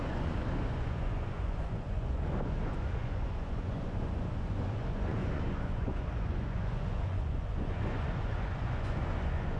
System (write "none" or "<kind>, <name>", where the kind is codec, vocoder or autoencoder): vocoder, Vocos